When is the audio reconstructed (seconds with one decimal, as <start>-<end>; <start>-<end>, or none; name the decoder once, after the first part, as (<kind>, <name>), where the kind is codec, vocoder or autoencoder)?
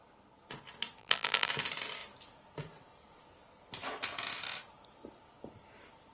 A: 1.0-1.5 (vocoder, BigVGAN v2)